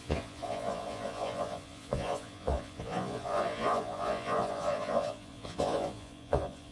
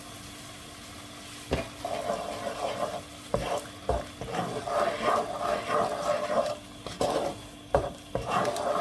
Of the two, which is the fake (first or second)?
first